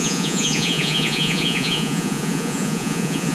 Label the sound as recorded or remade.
remade